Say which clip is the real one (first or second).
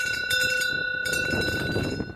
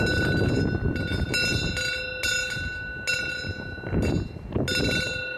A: second